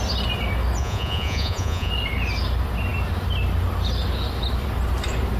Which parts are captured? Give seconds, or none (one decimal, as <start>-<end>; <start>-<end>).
0.0-0.8; 1.9-5.4